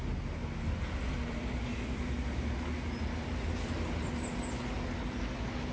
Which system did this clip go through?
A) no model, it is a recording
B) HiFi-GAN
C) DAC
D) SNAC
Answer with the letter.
A